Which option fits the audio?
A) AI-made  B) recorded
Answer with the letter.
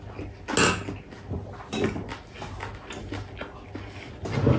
B